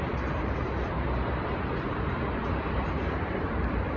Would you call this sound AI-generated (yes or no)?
yes